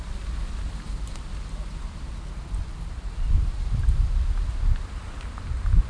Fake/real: real